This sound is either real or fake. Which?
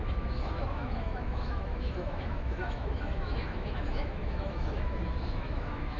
fake